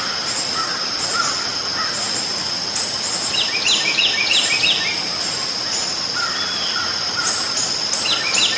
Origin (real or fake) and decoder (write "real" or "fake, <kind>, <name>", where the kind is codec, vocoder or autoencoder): real